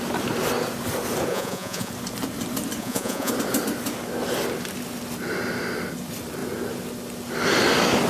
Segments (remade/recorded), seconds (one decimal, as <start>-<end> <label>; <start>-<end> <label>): 0.0-1.3 recorded; 1.3-1.9 remade; 1.9-2.8 recorded; 2.8-3.3 remade; 3.3-8.1 recorded